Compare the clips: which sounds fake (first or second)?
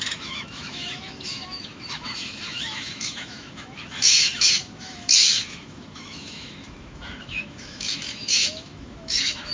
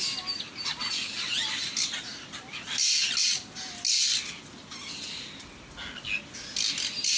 first